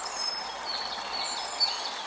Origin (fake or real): real